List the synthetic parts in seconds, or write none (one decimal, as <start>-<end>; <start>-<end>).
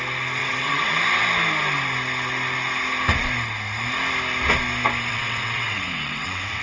0.4-1.0; 5.1-6.6